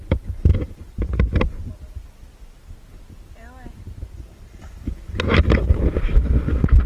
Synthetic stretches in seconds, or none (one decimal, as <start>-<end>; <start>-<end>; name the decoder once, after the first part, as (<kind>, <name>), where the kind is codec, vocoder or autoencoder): none